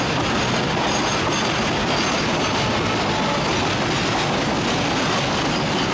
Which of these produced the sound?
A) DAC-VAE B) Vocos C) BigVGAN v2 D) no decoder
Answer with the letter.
D